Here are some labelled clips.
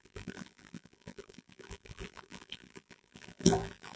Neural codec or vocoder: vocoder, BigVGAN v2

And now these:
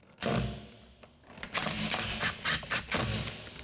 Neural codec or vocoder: none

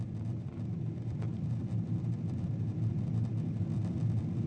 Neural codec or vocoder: vocoder, BigVGAN v2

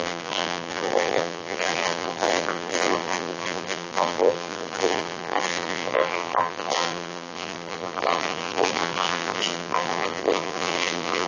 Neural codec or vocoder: vocoder, BigVGAN v2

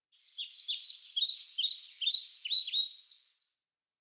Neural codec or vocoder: none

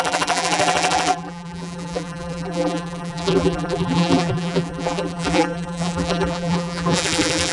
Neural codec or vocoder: vocoder, BigVGAN v2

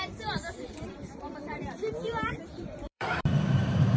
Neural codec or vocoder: vocoder, BigVGAN v2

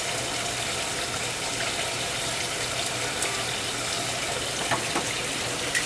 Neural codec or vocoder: none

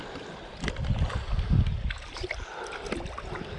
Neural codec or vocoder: none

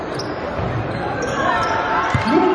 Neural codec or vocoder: vocoder, BigVGAN v2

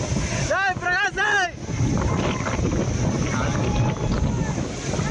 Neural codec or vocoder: none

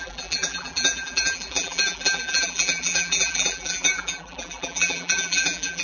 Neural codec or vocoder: vocoder, BigVGAN v2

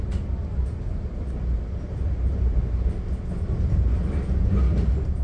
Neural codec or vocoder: none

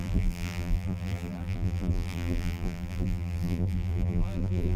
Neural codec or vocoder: vocoder, BigVGAN v2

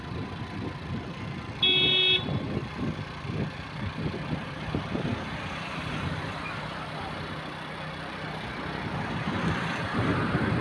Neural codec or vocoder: vocoder, BigVGAN v2